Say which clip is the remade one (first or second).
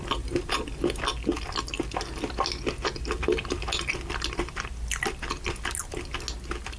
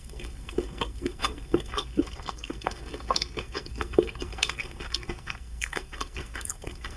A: second